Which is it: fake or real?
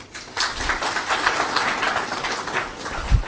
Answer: real